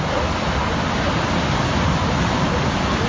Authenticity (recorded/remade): recorded